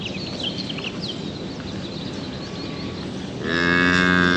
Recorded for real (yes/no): yes